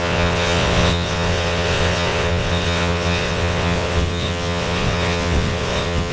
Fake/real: fake